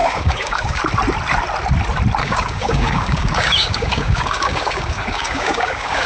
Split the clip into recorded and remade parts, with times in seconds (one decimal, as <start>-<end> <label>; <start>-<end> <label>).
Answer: 0.0-0.8 remade; 0.8-2.2 recorded; 2.2-6.1 remade